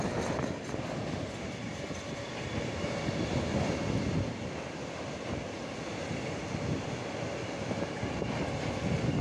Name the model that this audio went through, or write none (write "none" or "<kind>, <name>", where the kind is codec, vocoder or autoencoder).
none